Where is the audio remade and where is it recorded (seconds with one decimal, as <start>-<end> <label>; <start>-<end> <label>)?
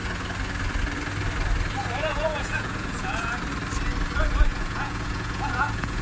0.0-2.1 recorded; 2.1-3.4 remade; 3.4-4.5 recorded; 4.5-6.0 remade